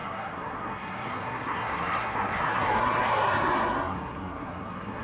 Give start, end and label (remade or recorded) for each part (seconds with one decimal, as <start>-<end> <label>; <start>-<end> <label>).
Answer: 0.0-5.0 remade